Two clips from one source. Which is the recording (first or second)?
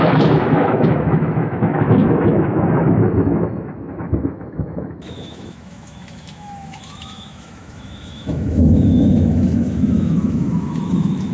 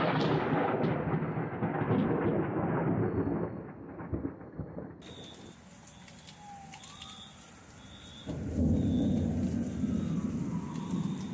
second